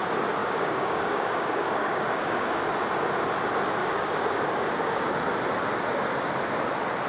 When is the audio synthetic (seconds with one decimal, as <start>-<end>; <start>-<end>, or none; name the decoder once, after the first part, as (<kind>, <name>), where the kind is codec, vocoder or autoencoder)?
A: 0.4-2.6 (codec, DAC); 3.8-5.1